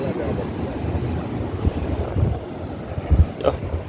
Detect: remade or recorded recorded